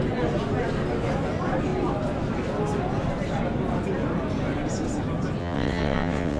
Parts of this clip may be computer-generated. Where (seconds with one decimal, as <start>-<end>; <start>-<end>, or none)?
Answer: 5.4-6.4